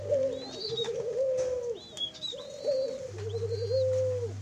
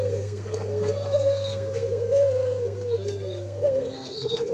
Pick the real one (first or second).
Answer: first